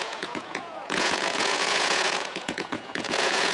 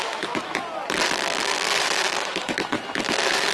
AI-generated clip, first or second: first